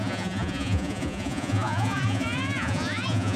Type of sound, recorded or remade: remade